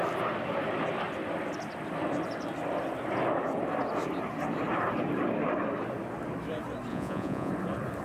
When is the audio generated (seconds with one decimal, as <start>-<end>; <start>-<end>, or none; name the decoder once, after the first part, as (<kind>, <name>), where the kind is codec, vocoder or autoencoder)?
6.9-7.5 (vocoder, Vocos)